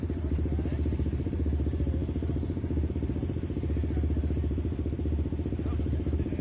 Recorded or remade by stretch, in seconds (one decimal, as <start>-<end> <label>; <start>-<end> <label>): 0.0-6.4 recorded